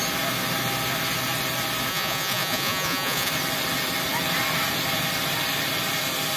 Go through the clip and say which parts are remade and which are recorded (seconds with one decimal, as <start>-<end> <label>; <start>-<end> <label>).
0.0-1.9 recorded; 1.9-3.3 remade; 3.3-6.4 recorded